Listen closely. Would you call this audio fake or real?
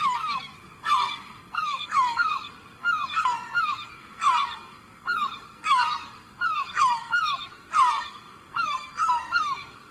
fake